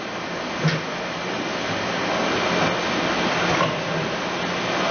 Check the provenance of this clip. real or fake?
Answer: real